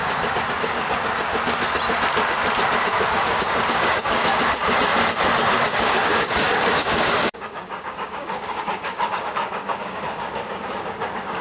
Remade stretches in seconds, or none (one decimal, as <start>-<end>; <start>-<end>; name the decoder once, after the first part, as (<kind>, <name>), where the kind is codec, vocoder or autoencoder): 0.5-1.0 (codec, DAC); 3.0-4.6; 5.7-11.4